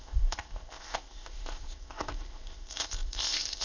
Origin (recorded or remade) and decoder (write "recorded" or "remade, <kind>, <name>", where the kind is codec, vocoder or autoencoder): remade, codec, ZipCodec